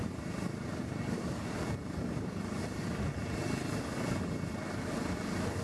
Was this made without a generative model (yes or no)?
no